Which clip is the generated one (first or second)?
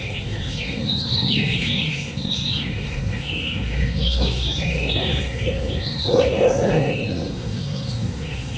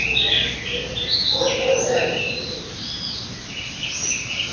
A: first